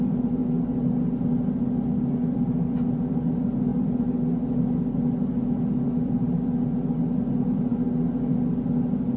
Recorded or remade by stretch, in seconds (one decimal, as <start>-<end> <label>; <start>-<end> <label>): 0.0-9.2 recorded